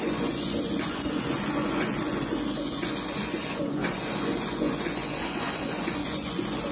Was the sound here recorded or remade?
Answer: remade